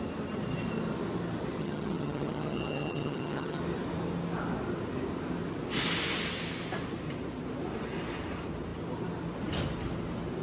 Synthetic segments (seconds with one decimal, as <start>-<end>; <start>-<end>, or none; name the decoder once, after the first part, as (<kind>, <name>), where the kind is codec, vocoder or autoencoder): 1.6-3.6 (vocoder, HiFi-GAN)